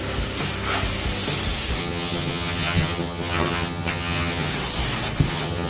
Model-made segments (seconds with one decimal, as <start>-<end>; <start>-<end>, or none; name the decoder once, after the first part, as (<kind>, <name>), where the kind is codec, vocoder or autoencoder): 1.8-4.5 (vocoder, HiFi-GAN); 5.3-5.7